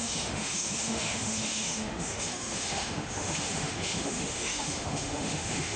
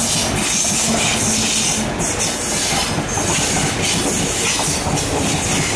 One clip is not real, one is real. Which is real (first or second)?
second